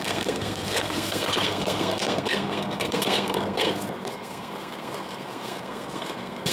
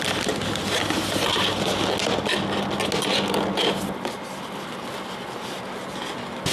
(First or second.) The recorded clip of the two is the second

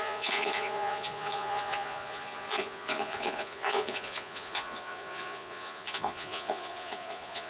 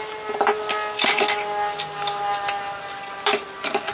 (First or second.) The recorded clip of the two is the second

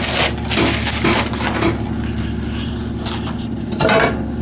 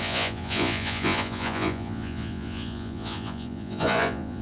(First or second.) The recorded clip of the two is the first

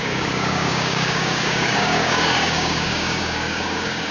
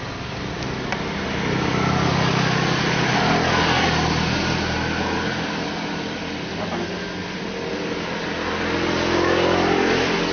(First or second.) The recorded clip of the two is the second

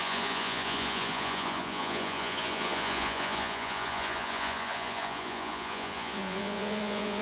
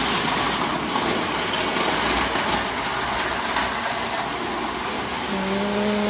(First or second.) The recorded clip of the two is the second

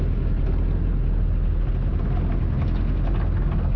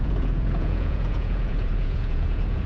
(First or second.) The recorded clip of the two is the first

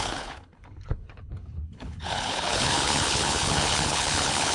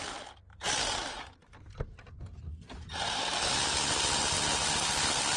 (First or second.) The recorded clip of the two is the second